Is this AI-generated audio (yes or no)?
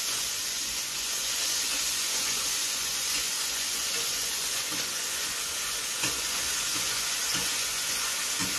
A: yes